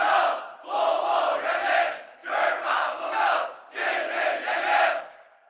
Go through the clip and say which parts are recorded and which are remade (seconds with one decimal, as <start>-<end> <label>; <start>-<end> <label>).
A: 0.0-1.8 recorded; 1.8-3.6 remade; 3.6-4.9 recorded; 4.9-5.5 remade